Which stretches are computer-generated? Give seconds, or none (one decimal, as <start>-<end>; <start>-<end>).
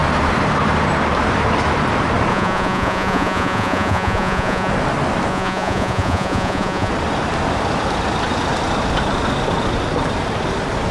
2.3-4.7; 5.3-6.9